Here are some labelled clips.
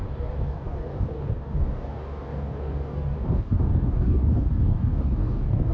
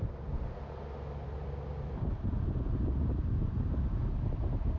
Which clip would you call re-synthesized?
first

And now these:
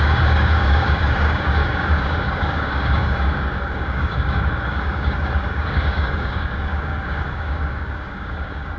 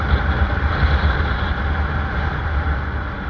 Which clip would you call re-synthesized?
first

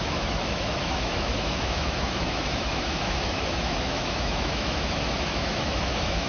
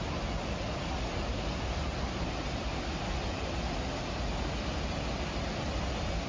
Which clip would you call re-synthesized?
first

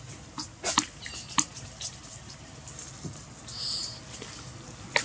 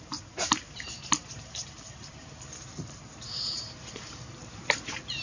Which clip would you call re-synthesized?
second